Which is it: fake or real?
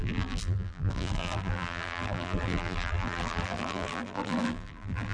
fake